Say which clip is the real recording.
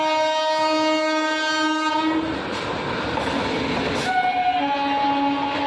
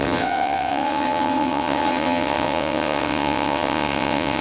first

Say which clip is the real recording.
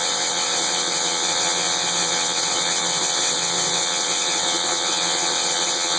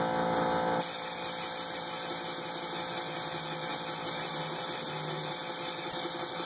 second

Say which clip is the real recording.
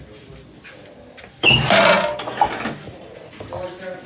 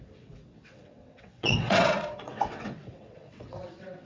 first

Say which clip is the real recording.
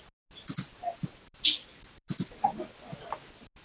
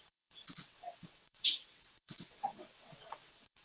first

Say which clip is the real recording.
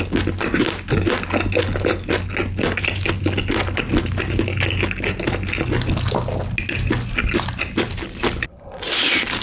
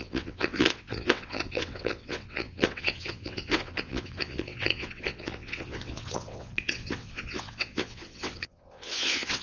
first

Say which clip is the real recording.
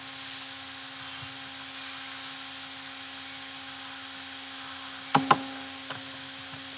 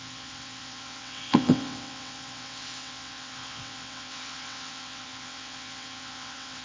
first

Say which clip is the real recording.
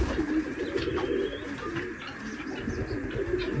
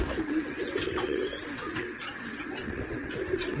first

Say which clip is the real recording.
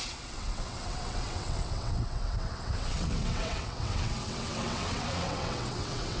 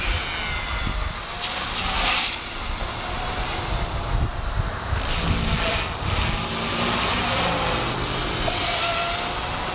second